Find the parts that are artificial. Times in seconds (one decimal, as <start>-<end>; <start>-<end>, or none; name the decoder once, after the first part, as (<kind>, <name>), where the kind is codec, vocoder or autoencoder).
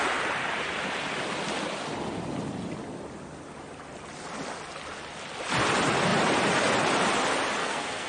7.6-8.1 (codec, SNAC)